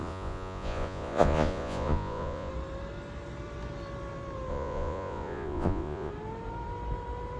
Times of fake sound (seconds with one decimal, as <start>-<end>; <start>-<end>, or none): 0.0-2.5; 4.5-6.1